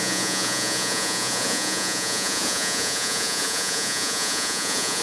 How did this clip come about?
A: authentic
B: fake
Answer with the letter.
B